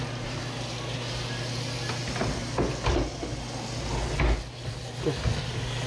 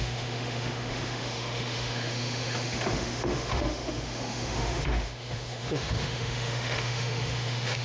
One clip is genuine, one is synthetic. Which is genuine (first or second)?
first